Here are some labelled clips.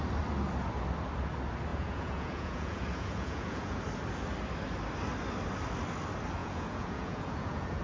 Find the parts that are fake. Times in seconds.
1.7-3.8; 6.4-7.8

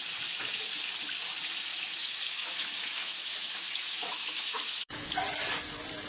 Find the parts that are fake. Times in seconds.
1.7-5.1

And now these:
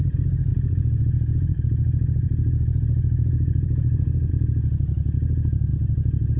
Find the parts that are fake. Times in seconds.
0.5-4.3; 5.7-6.4

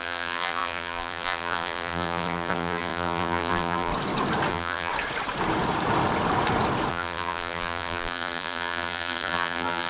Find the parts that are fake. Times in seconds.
0.0-3.9; 4.5-4.9; 6.9-9.9

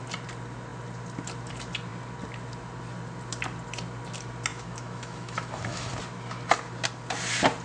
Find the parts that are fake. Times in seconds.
4.5-5.9